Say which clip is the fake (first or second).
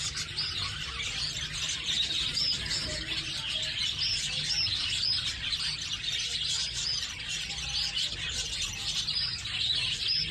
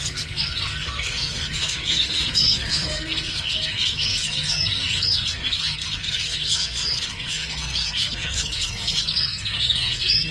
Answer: second